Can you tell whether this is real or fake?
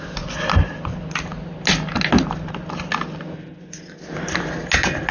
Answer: real